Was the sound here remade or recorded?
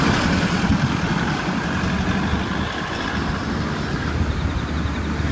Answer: recorded